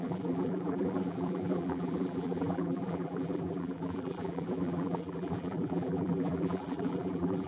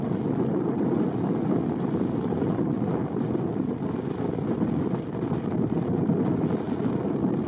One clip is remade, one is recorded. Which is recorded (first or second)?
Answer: second